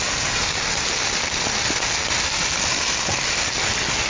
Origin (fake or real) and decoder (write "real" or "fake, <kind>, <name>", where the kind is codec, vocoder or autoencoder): real